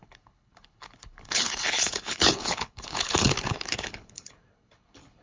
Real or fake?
fake